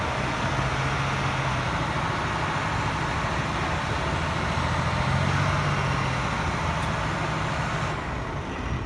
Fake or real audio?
real